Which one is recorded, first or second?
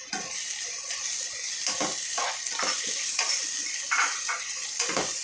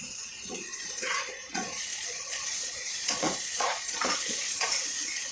first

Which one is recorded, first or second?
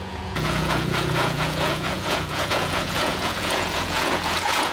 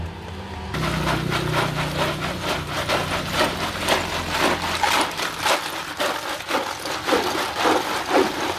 second